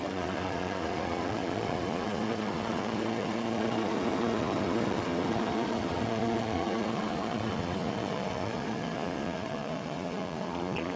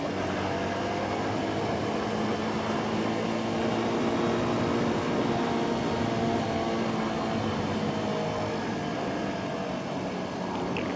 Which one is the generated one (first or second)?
first